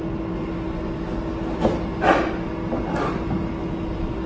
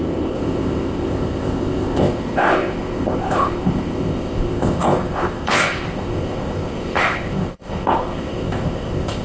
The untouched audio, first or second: first